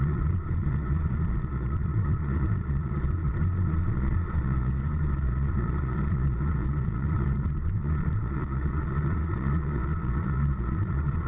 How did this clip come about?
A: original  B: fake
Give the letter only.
B